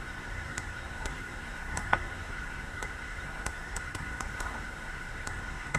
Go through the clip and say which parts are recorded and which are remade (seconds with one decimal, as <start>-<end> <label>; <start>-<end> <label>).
0.0-5.8 remade